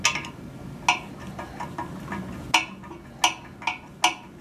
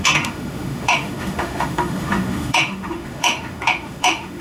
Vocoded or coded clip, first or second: second